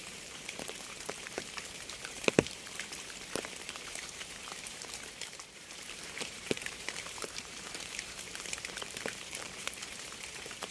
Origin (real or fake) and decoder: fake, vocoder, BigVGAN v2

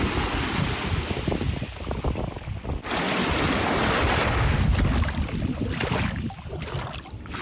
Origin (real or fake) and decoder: fake, vocoder, BigVGAN v2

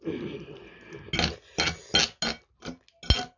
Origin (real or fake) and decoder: real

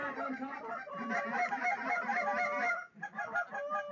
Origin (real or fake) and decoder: real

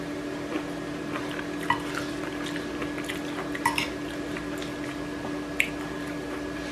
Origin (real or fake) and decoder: real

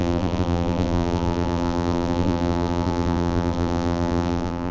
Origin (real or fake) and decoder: fake, vocoder, BigVGAN v2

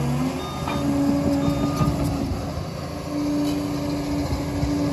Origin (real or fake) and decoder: real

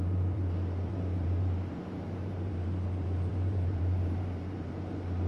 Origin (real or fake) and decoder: fake, vocoder, BigVGAN v2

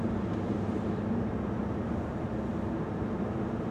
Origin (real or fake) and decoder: real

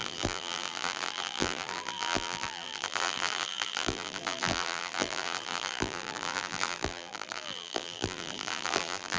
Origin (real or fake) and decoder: fake, vocoder, BigVGAN v2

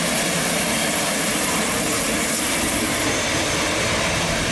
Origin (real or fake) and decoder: fake, vocoder, BigVGAN v2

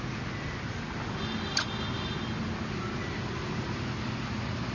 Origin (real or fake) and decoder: real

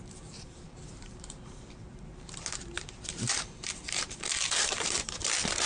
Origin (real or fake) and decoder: fake, vocoder, BigVGAN v2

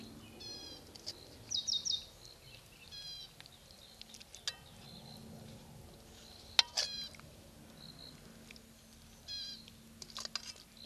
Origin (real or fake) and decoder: real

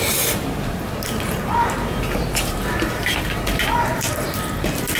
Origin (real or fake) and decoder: fake, vocoder, BigVGAN v2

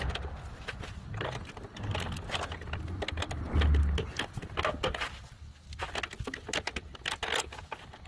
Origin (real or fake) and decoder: real